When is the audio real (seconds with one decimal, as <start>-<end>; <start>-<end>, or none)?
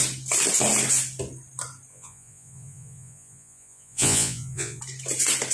0.0-1.9; 4.8-5.5